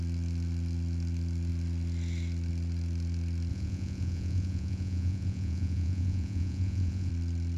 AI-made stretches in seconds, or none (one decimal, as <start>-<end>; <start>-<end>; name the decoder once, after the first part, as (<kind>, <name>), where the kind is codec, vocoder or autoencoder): 3.5-7.1 (vocoder, Vocos)